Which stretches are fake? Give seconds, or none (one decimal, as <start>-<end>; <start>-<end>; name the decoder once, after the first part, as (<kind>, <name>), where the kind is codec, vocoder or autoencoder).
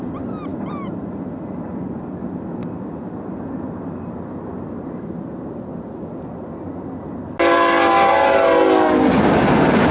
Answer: 0.5-1.2 (vocoder, BigVGAN v2)